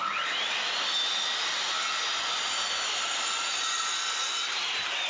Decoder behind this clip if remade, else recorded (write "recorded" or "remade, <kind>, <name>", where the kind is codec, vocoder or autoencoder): remade, vocoder, BigVGAN v2